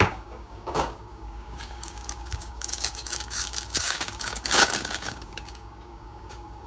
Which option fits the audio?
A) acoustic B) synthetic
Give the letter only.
B